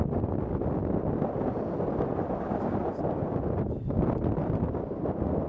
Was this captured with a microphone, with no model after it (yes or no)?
yes